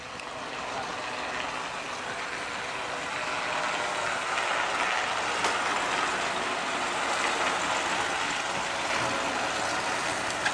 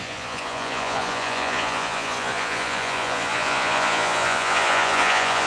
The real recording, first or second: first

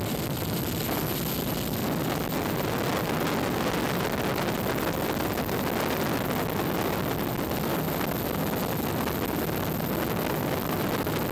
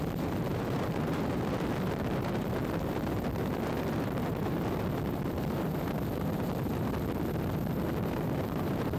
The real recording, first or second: first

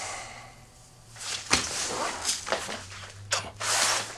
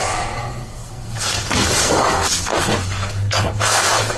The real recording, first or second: first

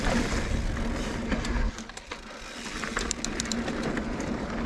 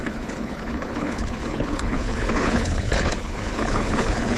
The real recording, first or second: first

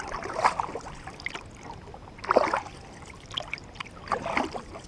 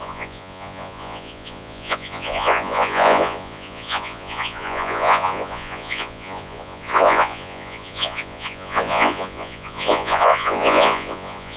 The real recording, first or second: first